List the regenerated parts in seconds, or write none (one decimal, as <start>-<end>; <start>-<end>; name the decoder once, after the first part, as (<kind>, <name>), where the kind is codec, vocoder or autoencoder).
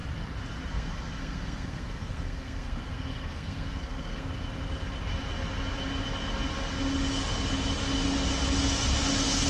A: 0.7-4.3 (codec, SNAC)